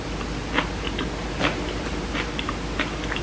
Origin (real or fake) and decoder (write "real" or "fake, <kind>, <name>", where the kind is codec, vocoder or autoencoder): real